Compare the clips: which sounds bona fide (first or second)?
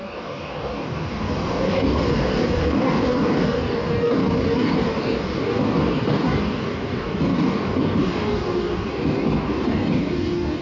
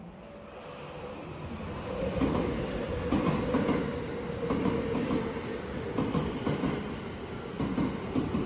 second